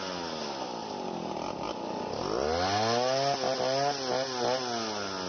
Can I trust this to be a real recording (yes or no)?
yes